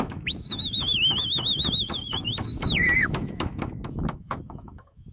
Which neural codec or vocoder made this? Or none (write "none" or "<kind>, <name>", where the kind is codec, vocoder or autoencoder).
autoencoder, DAC-VAE